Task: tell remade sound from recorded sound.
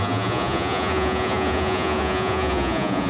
remade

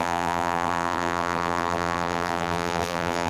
remade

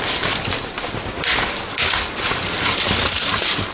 recorded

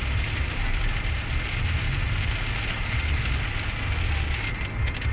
recorded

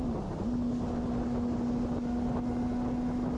recorded